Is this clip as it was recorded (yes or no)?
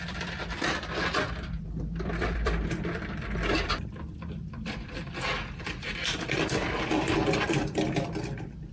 no